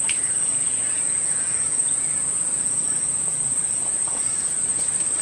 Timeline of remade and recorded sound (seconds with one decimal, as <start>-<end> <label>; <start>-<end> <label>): 0.0-4.3 remade; 4.3-5.2 recorded